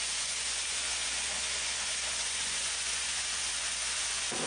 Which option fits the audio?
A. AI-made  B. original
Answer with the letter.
A